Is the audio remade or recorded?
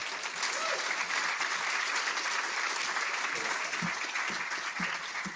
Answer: recorded